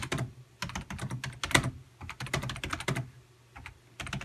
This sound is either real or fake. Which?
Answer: real